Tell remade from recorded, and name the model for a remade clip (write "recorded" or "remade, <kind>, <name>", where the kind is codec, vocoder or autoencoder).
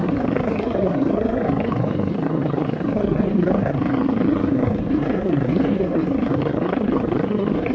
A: remade, codec, SNAC